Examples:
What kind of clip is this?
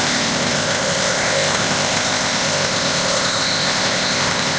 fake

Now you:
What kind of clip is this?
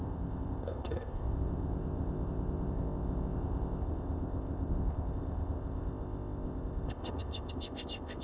fake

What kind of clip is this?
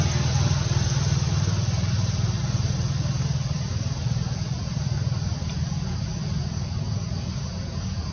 real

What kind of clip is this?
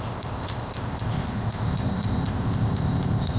fake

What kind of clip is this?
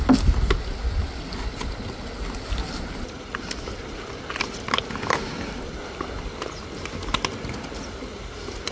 real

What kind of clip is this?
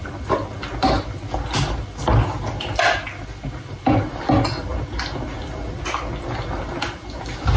real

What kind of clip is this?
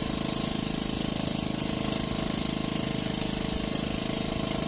real